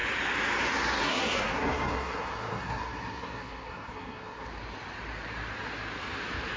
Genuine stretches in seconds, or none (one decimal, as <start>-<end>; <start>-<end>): 0.0-1.0; 4.5-6.6